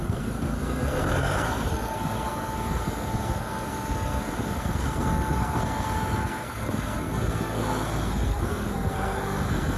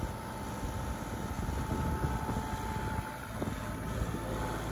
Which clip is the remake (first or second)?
first